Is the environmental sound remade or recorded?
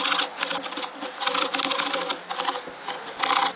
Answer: recorded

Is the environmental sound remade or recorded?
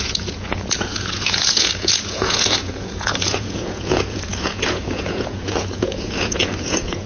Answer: remade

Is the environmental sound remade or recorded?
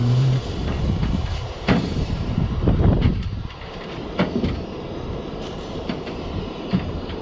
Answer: remade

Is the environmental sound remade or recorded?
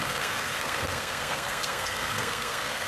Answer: remade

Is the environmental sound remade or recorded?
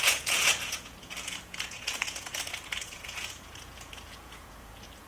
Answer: remade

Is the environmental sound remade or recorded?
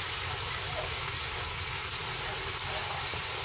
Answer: recorded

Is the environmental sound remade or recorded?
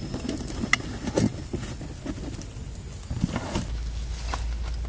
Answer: recorded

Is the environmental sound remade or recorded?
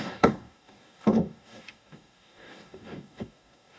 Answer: remade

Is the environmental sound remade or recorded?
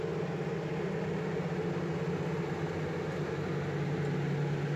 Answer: recorded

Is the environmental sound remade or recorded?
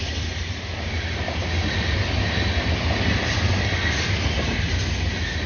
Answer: recorded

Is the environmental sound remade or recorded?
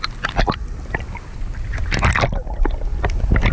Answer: recorded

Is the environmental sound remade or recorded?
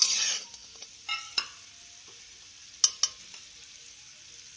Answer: recorded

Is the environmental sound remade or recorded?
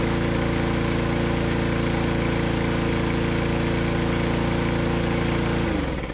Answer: recorded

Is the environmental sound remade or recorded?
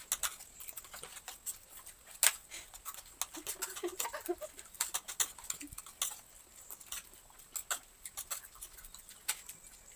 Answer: recorded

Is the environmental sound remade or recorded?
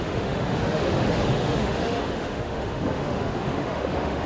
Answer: remade